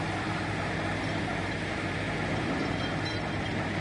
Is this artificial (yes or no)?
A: no